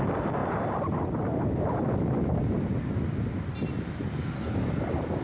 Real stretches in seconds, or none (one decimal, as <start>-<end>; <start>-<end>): 0.0-5.2